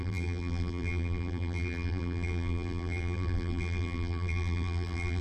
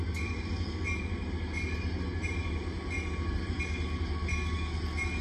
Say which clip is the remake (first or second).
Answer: first